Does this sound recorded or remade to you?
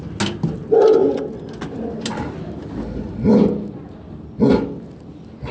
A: recorded